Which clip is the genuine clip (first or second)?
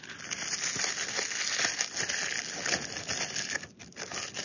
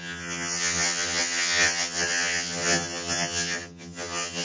first